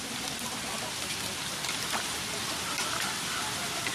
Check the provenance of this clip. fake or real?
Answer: fake